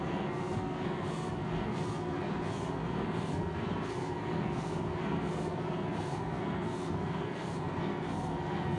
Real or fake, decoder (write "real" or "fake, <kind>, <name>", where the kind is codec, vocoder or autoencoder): fake, codec, SNAC